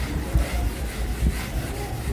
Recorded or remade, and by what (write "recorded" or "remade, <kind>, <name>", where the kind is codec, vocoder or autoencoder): recorded